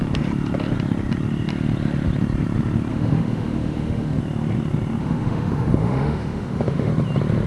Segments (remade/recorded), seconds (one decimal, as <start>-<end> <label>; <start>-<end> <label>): 0.0-2.9 recorded; 2.9-4.2 remade; 4.2-5.0 recorded; 5.0-6.9 remade; 6.9-7.5 recorded